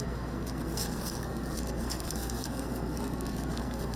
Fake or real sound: fake